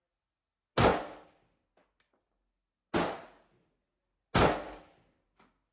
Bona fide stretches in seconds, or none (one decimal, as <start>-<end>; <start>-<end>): 0.0-5.7